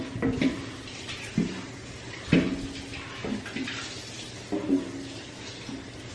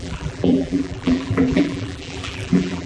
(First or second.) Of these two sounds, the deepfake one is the second